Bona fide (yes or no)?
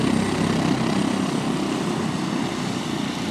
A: yes